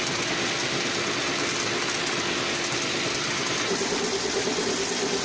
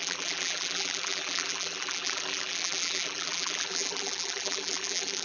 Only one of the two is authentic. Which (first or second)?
first